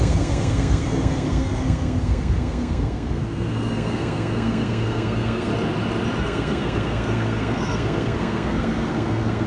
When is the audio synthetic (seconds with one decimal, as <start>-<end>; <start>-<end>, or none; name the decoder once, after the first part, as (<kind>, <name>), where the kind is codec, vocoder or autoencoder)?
0.0-5.5 (codec, SNAC); 6.2-9.5